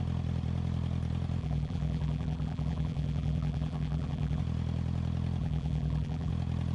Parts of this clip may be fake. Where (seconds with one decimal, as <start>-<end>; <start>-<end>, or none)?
1.4-4.4; 5.4-6.3